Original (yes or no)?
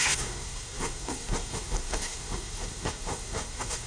no